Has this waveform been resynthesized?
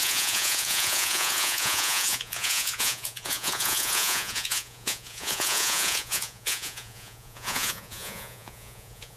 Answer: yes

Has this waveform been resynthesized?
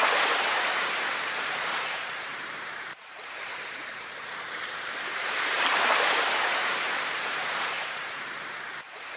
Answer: yes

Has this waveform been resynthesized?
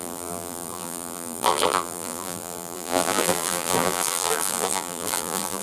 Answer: yes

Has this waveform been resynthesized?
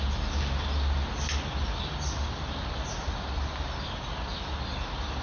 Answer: no